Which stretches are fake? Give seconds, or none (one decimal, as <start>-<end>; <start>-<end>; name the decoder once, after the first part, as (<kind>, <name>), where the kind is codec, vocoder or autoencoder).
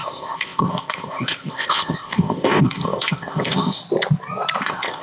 0.0-3.8 (codec, ZipCodec); 4.6-5.0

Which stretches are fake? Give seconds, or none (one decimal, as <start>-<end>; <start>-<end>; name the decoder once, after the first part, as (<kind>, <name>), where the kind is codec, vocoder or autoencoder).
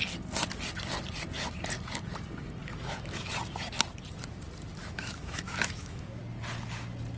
2.6-3.3 (autoencoder, DAC-VAE); 4.8-6.2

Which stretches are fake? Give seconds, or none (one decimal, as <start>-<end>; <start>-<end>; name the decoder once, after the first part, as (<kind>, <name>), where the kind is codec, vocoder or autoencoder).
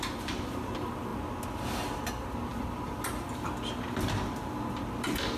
none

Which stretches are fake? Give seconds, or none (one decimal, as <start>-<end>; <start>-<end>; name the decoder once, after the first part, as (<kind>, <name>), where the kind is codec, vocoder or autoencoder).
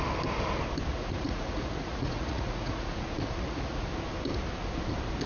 0.9-3.9 (vocoder, Vocos)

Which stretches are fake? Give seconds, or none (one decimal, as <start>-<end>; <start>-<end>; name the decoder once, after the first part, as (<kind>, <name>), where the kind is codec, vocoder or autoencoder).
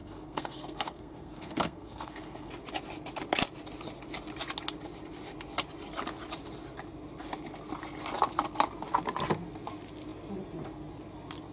0.0-2.5 (codec, SNAC)